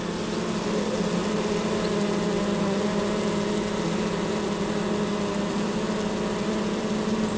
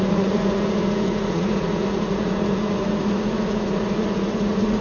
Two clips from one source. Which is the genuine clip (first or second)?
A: first